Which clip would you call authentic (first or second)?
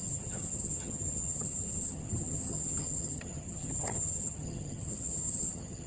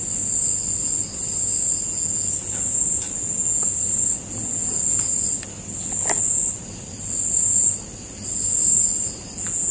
second